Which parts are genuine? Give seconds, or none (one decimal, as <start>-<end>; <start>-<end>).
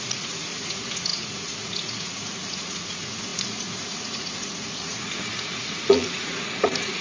none